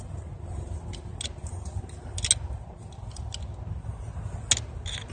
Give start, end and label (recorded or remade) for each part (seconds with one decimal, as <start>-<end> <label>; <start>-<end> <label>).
0.0-5.1 recorded

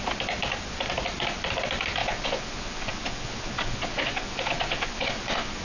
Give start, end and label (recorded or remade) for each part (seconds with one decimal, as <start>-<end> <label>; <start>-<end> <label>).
0.0-2.0 recorded; 2.0-5.6 remade

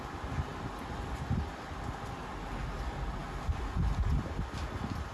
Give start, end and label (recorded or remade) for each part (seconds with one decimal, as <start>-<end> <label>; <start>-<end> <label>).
0.0-5.1 recorded

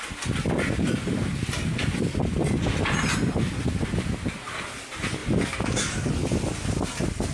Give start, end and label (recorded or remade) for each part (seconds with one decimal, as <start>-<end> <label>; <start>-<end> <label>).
0.0-7.3 recorded

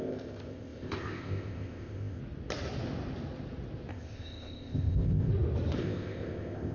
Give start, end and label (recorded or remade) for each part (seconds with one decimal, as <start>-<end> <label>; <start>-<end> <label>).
0.0-2.2 remade; 2.2-3.9 recorded; 3.9-5.3 remade; 5.3-5.8 recorded; 5.8-6.7 remade

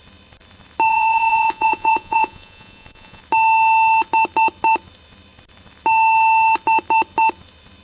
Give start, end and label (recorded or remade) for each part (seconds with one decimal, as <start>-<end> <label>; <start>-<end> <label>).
0.0-0.9 recorded; 0.9-3.2 remade; 3.2-7.8 recorded

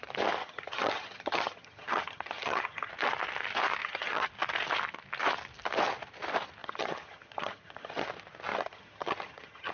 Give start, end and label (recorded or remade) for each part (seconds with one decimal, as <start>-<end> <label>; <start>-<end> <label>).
0.0-0.4 recorded; 0.4-2.9 remade; 2.9-3.8 recorded; 3.8-4.3 remade; 4.3-6.6 recorded; 6.6-8.1 remade; 8.1-8.5 recorded; 8.5-9.7 remade

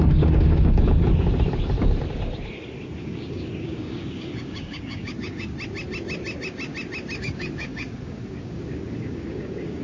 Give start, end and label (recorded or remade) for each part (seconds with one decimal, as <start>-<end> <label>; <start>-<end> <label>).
0.0-1.1 remade; 1.1-3.0 recorded; 3.0-5.5 remade; 5.5-7.2 recorded; 7.2-9.8 remade